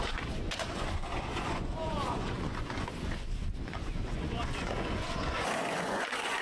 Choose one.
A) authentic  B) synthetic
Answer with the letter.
B